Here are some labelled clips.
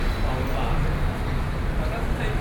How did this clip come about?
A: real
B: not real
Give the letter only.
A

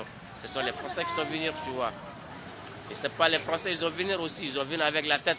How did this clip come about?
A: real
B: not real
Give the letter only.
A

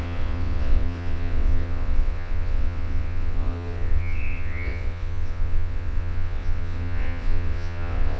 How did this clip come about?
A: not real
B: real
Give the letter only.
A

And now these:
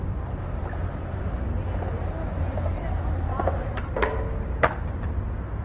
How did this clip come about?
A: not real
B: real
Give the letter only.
B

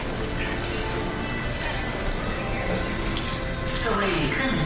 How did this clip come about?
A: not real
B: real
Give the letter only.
B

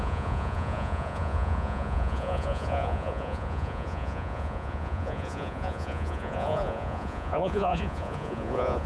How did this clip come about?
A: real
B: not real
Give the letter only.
B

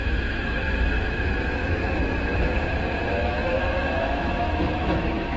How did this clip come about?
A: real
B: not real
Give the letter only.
B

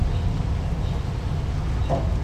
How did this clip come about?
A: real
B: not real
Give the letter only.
A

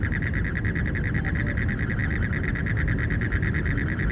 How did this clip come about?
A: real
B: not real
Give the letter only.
A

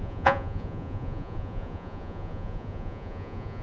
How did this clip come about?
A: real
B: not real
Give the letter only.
B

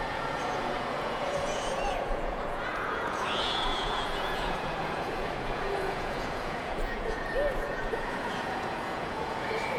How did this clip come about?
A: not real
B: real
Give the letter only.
A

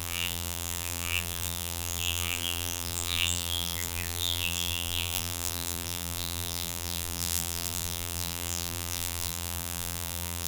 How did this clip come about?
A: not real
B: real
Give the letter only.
A